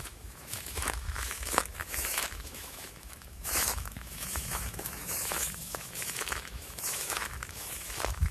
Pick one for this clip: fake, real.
fake